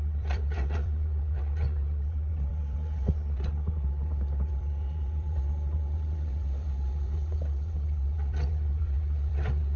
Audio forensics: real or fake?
fake